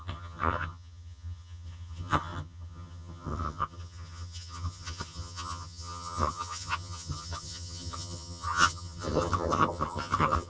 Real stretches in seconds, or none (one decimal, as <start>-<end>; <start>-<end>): none